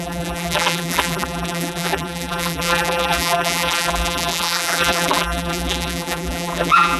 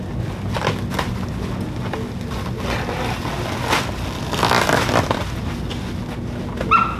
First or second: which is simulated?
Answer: first